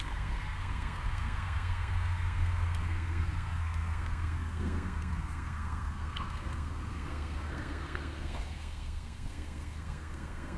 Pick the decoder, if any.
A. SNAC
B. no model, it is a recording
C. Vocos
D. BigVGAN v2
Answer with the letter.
A